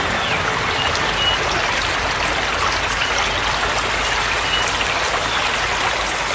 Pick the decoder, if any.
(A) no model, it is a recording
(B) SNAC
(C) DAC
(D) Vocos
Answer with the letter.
A